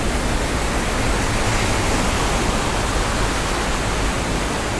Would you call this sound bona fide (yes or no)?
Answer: yes